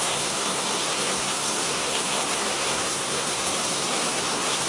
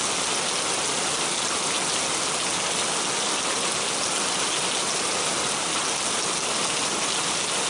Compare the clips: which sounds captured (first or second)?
second